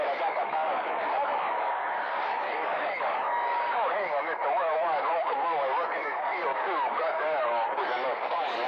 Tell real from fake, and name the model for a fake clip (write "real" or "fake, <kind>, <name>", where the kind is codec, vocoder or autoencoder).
fake, codec, DAC